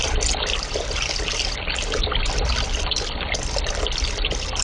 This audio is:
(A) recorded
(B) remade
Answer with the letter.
B